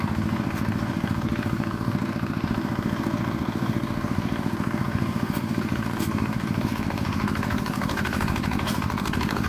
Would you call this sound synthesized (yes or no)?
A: yes